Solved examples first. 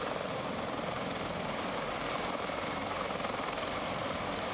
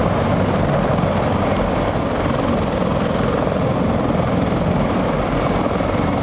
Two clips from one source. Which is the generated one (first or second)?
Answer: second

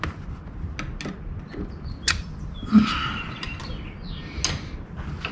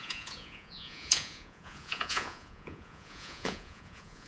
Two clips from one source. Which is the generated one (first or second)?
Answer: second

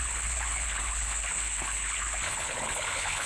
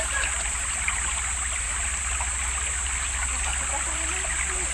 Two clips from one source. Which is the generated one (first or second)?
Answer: first